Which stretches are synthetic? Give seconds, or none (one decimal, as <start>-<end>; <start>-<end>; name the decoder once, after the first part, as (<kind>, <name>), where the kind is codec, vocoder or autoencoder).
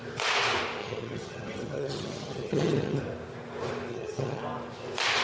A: 0.8-3.0 (vocoder, HiFi-GAN); 3.9-4.4